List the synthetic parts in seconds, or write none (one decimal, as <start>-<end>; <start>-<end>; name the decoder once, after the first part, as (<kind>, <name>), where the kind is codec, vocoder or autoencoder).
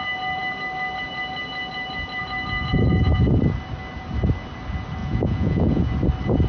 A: 2.7-3.4 (vocoder, Vocos); 5.0-5.9